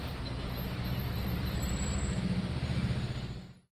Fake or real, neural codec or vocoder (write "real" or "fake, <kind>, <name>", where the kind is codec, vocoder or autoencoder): real